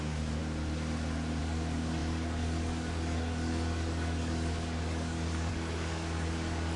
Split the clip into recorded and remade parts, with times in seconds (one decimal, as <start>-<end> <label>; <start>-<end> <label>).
0.0-0.4 remade; 0.4-1.4 recorded; 1.4-6.8 remade

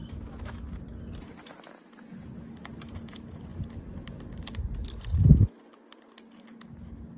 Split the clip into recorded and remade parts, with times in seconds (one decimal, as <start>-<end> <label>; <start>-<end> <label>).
0.0-7.2 recorded

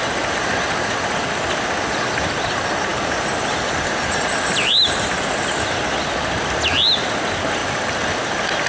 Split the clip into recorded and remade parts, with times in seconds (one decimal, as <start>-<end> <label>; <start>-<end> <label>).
0.0-2.9 recorded; 2.9-4.7 remade; 4.7-7.6 recorded; 7.6-8.1 remade; 8.1-8.7 recorded

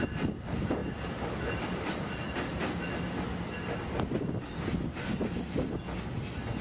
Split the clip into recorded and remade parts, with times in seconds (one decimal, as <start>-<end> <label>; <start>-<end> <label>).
0.0-6.6 recorded

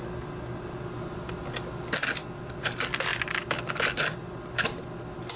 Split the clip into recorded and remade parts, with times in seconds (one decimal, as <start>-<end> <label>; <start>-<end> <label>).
0.0-5.4 recorded

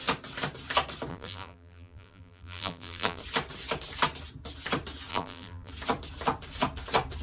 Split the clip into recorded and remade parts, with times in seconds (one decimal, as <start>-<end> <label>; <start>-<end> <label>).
0.0-1.1 recorded; 1.1-3.2 remade; 3.2-5.1 recorded; 5.1-5.7 remade; 5.7-7.2 recorded

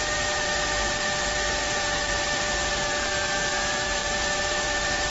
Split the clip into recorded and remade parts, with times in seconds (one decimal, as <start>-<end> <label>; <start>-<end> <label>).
0.0-5.1 remade

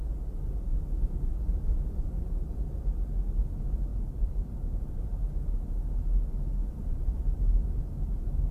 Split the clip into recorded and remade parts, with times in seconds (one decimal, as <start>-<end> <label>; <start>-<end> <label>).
0.0-0.7 recorded; 0.7-2.3 remade; 2.3-3.9 recorded; 3.9-4.8 remade; 4.8-6.6 recorded; 6.6-7.2 remade; 7.2-8.5 recorded